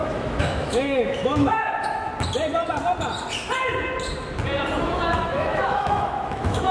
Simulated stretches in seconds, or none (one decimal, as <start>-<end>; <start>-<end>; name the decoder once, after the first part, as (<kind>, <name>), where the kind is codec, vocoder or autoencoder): 0.0-2.1 (autoencoder, DAC-VAE); 4.8-6.7